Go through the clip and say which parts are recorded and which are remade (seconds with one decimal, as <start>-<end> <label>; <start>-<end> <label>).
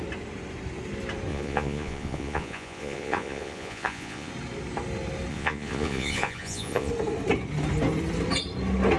0.0-1.3 recorded; 1.3-4.3 remade; 4.3-5.3 recorded; 5.3-6.9 remade; 6.9-9.0 recorded